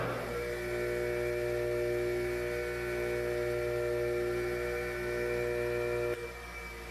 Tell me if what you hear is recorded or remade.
recorded